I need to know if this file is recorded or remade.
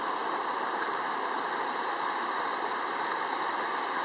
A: recorded